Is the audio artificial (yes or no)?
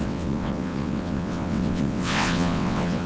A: yes